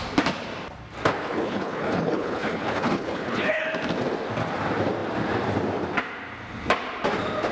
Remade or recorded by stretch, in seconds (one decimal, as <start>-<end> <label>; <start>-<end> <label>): 0.0-1.2 recorded; 1.2-3.6 remade; 3.6-7.5 recorded

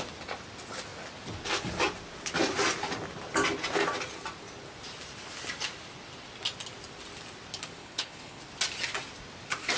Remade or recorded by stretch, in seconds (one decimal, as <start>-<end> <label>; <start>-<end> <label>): 0.0-7.8 recorded; 7.8-8.4 remade; 8.4-9.8 recorded

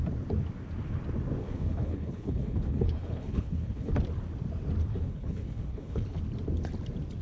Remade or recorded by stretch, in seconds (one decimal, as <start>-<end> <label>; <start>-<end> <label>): 0.0-1.4 recorded; 1.4-3.9 remade; 3.9-4.9 recorded; 4.9-6.2 remade; 6.2-7.2 recorded

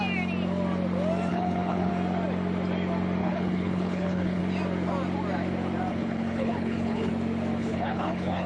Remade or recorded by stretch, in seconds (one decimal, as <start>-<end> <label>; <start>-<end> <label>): 0.0-1.3 recorded; 1.3-1.9 remade; 1.9-3.2 recorded; 3.2-4.4 remade; 4.4-5.9 recorded; 5.9-7.1 remade; 7.1-7.6 recorded; 7.6-8.5 remade

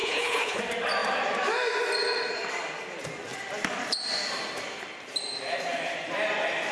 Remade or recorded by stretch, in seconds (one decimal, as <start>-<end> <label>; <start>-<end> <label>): 0.0-0.6 remade; 0.6-6.7 recorded

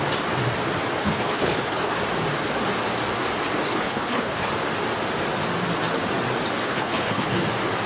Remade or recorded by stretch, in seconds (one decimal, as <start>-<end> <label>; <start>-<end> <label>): 0.0-1.0 recorded; 1.0-2.0 remade; 2.0-3.7 recorded; 3.7-4.5 remade; 4.5-6.6 recorded; 6.6-7.3 remade; 7.3-7.9 recorded

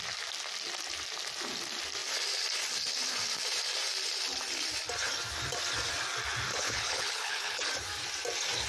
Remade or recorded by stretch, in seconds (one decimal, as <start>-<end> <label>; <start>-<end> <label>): 0.0-6.5 recorded; 6.5-7.6 remade; 7.6-8.7 recorded